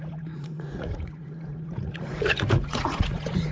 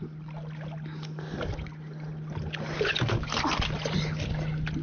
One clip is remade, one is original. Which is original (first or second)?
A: second